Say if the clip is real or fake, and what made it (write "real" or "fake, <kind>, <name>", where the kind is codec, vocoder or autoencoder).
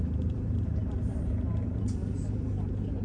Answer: fake, vocoder, BigVGAN v2